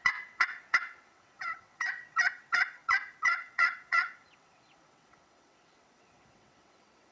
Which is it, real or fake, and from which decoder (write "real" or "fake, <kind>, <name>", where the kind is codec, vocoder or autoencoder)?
fake, vocoder, WaveNeXt